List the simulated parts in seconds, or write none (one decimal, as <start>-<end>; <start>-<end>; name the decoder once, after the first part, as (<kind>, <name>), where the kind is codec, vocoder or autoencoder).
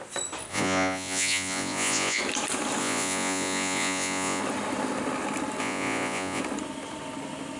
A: 0.5-2.2 (vocoder, Vocos); 2.8-4.4; 5.6-6.4